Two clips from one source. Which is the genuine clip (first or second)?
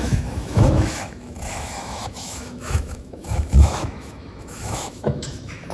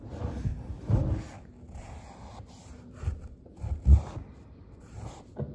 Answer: second